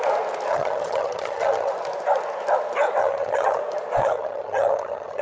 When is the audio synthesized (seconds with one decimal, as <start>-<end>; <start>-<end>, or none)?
0.5-1.7; 3.0-3.6; 4.0-5.2